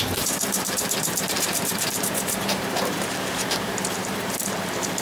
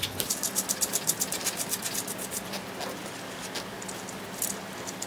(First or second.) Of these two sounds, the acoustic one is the second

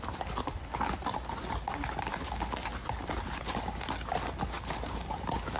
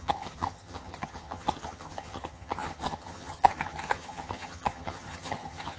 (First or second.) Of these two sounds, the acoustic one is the first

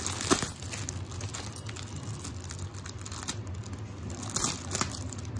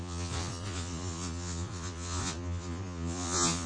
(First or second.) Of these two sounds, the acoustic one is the first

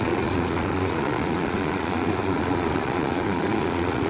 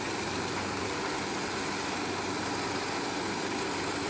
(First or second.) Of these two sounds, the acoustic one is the second